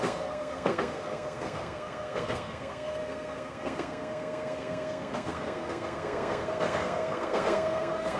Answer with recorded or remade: remade